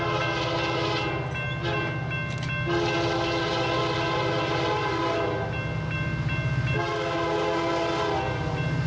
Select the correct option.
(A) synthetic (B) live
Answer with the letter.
B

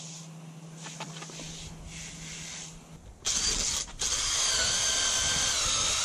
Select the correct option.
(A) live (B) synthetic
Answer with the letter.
A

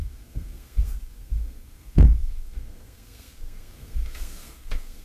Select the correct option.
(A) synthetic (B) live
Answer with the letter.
A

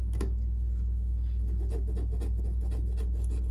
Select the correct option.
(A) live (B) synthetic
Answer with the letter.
A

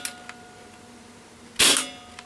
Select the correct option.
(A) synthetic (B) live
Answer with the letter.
B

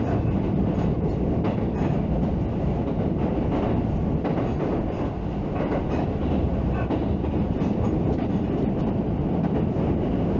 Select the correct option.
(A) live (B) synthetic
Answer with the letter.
A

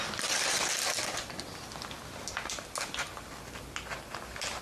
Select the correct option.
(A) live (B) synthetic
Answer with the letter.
A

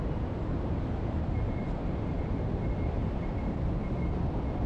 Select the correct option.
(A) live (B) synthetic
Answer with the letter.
B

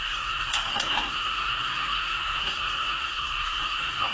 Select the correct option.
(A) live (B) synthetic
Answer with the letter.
B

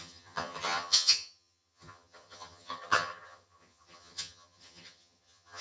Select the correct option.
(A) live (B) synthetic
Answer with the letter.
B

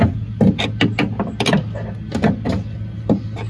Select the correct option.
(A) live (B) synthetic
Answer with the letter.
A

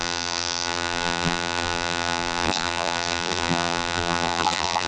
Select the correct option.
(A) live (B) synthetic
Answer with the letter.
B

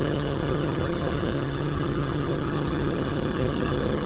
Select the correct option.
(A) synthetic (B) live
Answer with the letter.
A